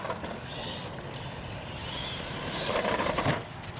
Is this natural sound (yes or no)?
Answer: yes